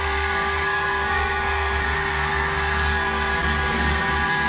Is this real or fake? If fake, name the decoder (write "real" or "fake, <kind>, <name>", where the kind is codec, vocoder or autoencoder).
fake, codec, SNAC